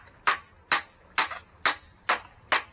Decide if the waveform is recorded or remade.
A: recorded